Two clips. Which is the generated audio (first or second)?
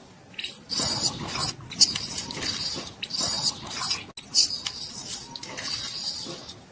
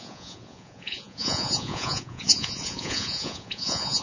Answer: second